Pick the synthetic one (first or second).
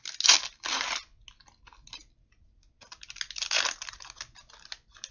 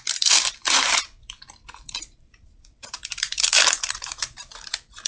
second